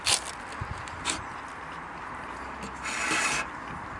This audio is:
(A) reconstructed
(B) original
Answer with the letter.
B